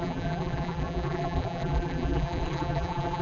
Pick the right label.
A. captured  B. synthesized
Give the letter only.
B